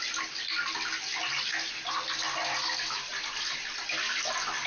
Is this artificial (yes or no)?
no